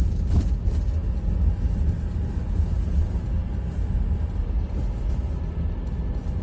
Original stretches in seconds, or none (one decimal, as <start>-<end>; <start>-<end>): 0.0-6.4